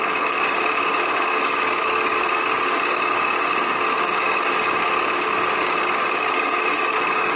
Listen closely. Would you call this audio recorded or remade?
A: remade